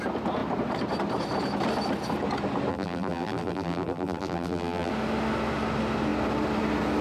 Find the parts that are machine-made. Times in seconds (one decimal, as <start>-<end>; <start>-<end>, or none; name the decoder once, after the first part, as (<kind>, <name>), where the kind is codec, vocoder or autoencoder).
2.7-4.9 (vocoder, BigVGAN v2)